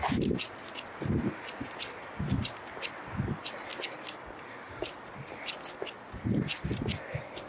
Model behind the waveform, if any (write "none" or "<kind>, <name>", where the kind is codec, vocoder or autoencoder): none